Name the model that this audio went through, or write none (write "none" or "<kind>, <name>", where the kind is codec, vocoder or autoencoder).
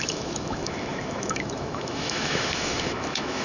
autoencoder, DAC-VAE